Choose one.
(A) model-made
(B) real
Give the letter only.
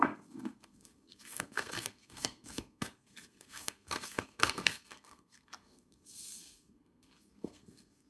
A